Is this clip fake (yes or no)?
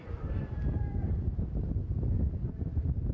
yes